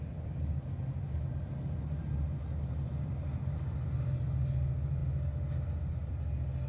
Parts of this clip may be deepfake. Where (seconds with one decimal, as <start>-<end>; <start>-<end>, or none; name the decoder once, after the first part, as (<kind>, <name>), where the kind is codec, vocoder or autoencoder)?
none